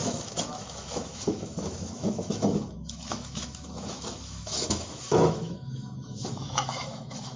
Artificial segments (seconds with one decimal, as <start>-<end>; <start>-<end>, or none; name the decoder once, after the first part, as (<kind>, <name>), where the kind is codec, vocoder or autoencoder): 0.0-7.4 (autoencoder, DAC-VAE)